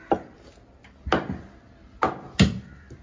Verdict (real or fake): real